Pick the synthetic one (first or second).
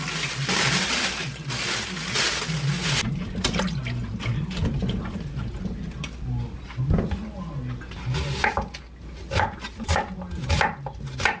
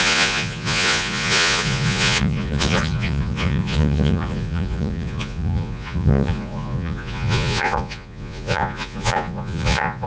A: second